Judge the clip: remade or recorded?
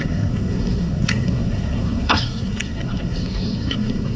remade